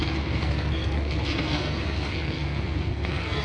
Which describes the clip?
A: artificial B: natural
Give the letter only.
A